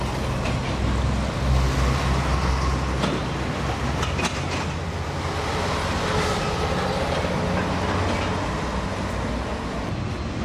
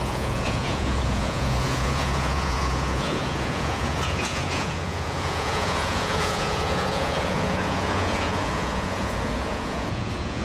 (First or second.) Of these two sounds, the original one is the first